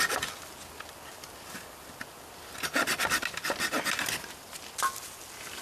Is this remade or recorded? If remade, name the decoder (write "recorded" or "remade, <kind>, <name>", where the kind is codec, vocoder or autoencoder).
recorded